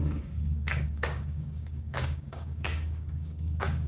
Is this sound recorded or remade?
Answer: remade